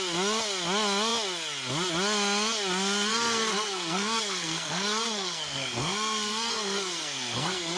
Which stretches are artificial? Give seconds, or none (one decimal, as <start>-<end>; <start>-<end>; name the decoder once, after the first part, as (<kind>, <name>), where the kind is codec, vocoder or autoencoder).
3.1-7.8 (codec, SNAC)